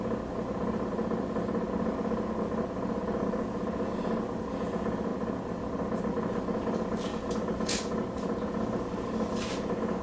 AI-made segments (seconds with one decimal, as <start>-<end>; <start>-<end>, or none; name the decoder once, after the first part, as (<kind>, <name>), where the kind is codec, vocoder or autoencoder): none